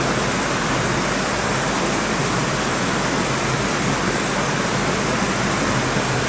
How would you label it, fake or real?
real